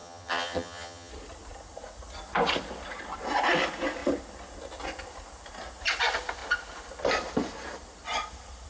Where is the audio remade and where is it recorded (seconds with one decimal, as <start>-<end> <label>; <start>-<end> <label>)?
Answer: 0.0-1.1 remade; 1.1-8.7 recorded